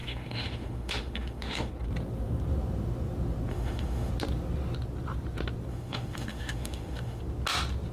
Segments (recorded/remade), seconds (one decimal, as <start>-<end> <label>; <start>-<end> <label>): 0.0-1.7 remade; 1.7-3.5 recorded; 3.5-4.1 remade; 4.1-5.7 recorded; 5.7-7.2 remade; 7.2-7.9 recorded

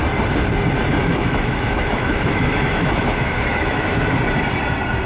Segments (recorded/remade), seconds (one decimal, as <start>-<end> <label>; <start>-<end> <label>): 0.0-1.0 recorded; 1.0-4.1 remade; 4.1-5.1 recorded

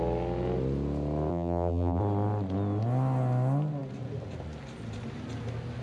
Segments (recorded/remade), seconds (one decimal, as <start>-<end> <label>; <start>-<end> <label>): 0.0-1.3 recorded; 1.3-2.0 remade; 2.0-5.8 recorded

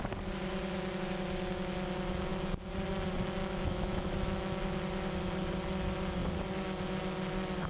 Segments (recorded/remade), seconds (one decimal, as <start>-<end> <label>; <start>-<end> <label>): 0.0-3.4 recorded; 3.4-4.6 remade; 4.6-7.7 recorded